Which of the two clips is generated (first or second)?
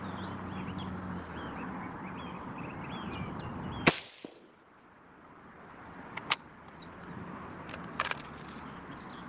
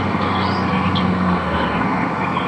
second